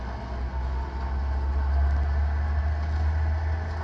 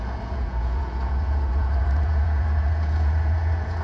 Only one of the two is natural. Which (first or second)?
first